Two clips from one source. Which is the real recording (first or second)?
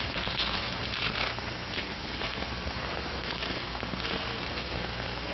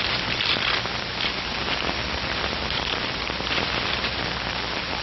second